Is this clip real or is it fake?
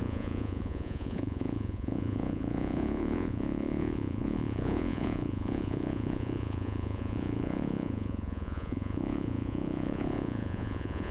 fake